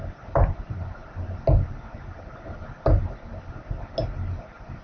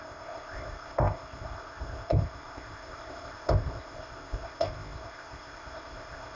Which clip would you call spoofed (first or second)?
second